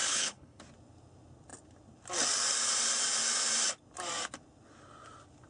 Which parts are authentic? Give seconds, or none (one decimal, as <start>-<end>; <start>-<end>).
0.6-5.5